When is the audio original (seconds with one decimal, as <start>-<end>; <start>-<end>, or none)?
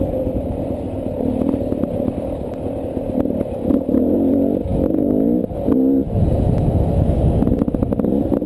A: 0.0-8.5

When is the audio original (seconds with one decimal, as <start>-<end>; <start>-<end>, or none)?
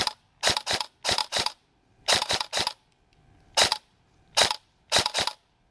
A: 0.0-1.2; 2.3-3.7; 5.2-5.7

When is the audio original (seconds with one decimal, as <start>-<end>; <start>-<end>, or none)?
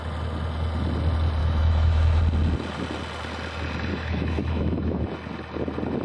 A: 0.0-1.4; 2.2-3.9; 5.0-6.0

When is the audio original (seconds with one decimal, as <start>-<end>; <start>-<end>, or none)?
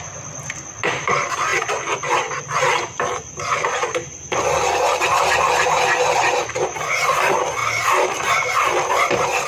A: 0.0-9.5